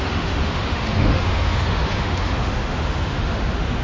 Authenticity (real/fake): fake